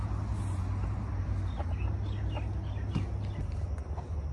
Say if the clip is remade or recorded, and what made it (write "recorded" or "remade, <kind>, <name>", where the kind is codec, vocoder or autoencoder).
recorded